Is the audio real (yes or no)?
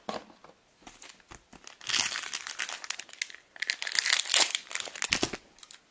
yes